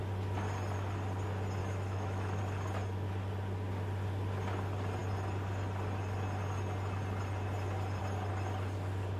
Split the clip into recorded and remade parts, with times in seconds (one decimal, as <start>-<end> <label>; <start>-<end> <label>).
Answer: 0.0-1.6 recorded; 1.6-2.4 remade; 2.4-9.2 recorded